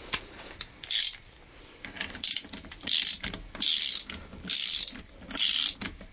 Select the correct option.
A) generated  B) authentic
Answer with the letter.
B